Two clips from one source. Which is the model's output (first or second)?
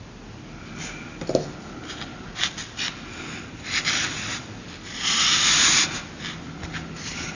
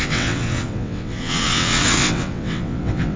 second